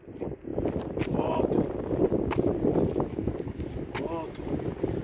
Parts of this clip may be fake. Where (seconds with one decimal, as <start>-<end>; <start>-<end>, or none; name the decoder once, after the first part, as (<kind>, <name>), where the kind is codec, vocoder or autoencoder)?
none